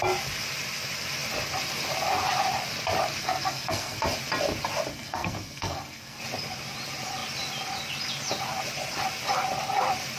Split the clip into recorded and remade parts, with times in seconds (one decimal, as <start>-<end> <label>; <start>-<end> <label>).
0.0-3.2 recorded; 3.2-4.0 remade; 4.0-4.9 recorded; 4.9-6.2 remade; 6.2-10.2 recorded